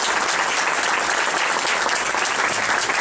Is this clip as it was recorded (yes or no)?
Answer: yes